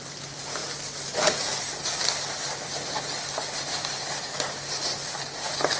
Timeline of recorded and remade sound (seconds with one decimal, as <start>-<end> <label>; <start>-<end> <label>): 0.0-5.8 recorded